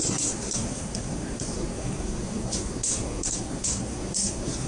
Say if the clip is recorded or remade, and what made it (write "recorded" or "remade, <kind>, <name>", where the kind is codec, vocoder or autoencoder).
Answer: remade, codec, SNAC